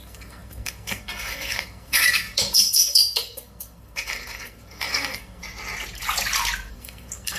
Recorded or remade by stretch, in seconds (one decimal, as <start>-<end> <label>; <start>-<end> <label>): 0.0-5.4 remade; 5.4-6.7 recorded; 6.7-7.4 remade